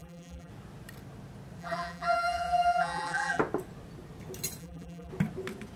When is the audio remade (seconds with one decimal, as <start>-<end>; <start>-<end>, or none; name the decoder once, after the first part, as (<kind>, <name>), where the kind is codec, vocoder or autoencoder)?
0.0-0.5 (vocoder, BigVGAN v2); 1.6-3.4; 4.6-5.1